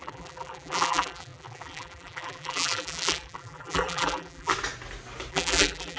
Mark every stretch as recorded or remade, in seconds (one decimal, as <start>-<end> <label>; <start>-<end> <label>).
0.0-4.5 remade; 4.5-5.3 recorded; 5.3-6.0 remade